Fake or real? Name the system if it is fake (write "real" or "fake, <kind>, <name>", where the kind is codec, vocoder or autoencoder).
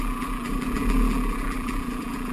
fake, vocoder, BigVGAN v2